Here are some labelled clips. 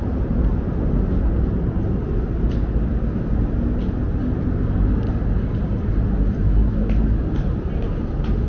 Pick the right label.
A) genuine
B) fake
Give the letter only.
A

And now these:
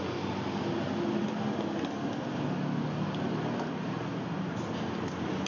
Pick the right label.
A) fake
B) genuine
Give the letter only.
B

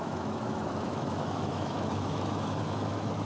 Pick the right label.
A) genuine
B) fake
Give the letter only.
B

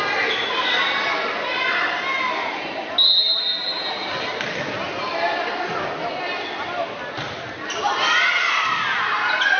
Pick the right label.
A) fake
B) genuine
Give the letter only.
B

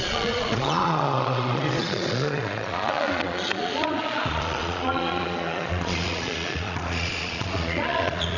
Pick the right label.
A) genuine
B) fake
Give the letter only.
B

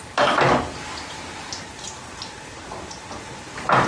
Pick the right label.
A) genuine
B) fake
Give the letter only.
A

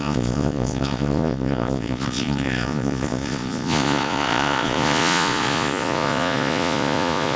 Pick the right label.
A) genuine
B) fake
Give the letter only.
B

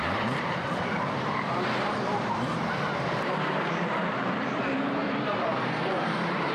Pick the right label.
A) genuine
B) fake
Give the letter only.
B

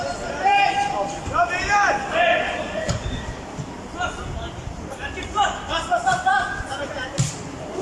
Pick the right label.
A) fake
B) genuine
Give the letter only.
A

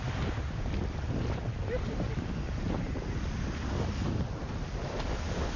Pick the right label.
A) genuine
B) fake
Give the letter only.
A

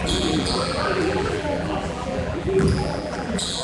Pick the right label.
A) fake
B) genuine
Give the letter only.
A